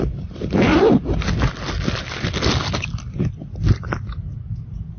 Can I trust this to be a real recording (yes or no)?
yes